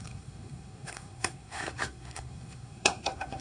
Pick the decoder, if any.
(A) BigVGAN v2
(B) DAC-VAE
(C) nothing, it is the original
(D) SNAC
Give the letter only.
D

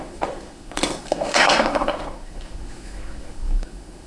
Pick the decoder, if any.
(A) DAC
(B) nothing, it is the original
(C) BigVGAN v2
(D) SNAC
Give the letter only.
D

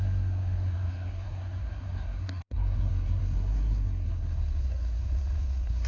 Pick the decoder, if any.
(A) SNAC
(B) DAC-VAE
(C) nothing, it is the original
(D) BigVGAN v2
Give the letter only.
A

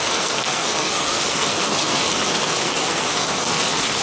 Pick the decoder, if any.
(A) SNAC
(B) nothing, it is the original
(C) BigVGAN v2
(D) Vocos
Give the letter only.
A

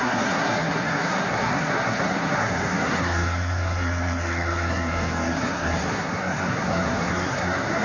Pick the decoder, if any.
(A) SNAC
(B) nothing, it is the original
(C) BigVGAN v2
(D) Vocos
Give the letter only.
A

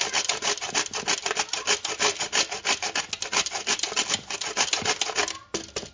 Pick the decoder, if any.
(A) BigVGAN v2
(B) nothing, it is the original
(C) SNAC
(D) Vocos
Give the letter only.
B